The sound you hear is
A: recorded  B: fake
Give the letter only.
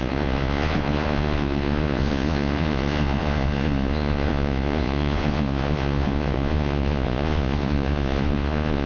B